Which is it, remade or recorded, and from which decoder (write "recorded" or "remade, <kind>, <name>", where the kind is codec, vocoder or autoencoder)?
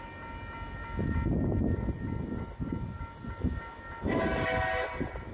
recorded